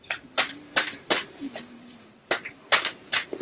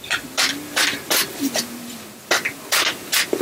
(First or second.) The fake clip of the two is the first